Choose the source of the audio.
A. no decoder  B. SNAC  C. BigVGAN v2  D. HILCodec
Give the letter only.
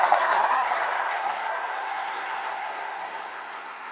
B